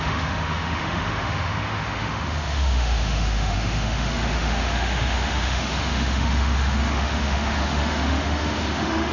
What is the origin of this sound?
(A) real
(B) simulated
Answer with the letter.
B